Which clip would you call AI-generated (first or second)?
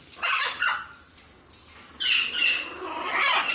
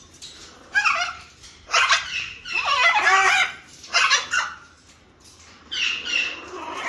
second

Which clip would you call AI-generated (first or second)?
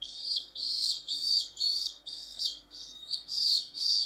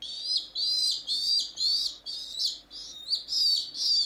first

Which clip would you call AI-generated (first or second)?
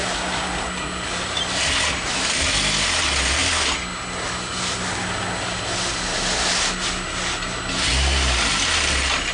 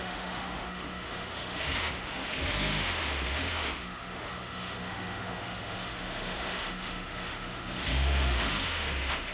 second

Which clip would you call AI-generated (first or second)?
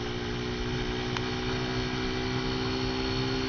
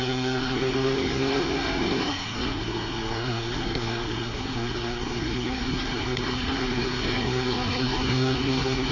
second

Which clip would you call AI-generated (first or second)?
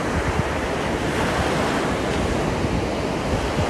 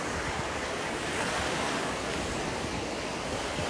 second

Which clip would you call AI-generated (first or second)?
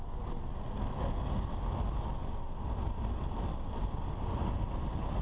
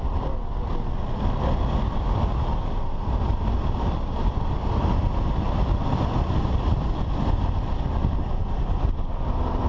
second